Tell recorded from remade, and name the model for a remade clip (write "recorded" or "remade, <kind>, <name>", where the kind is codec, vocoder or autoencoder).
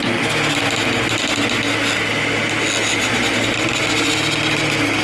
recorded